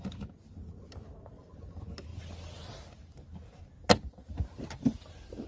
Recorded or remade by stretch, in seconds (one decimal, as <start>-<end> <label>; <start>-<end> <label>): 0.0-5.5 recorded